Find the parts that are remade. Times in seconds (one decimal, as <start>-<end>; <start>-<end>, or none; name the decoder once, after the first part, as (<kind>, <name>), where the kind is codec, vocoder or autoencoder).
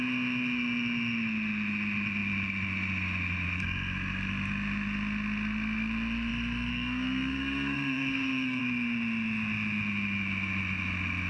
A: 6.7-8.6 (codec, SNAC)